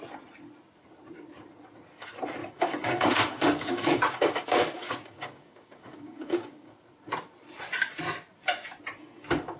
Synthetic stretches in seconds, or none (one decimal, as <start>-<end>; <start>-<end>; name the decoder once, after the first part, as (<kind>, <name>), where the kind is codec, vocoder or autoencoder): 2.4-6.7 (codec, DAC)